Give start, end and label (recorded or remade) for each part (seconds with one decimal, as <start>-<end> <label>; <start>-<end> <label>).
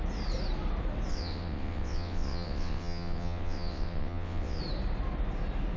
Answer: 0.0-1.1 recorded; 1.1-4.6 remade; 4.6-5.8 recorded